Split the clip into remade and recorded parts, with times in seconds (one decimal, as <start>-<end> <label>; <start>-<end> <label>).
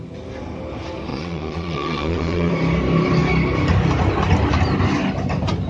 0.0-1.1 recorded; 1.1-2.5 remade; 2.5-5.7 recorded